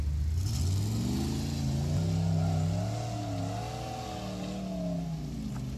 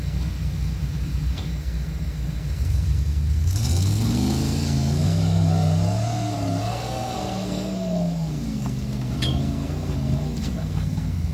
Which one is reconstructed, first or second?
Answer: second